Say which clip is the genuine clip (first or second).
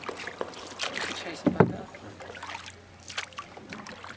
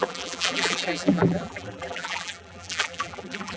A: first